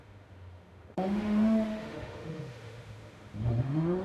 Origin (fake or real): fake